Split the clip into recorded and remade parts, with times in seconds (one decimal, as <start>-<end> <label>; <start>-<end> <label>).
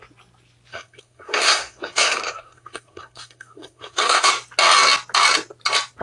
0.0-0.7 recorded; 0.7-4.3 remade; 4.3-6.0 recorded